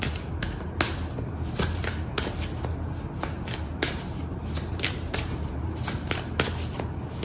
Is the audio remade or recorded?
recorded